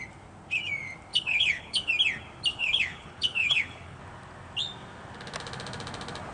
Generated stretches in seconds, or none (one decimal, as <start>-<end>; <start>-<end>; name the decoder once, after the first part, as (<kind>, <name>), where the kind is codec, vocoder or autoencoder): 1.1-1.9 (codec, HILCodec); 2.5-4.0